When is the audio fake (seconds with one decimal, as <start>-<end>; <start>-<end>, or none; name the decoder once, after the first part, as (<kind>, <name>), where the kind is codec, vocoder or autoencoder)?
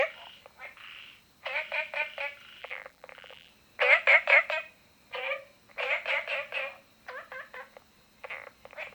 2.6-3.5 (vocoder, BigVGAN v2)